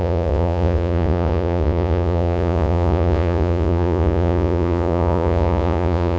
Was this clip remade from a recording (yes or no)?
yes